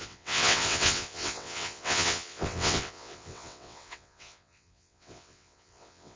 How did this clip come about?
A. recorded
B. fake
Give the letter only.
B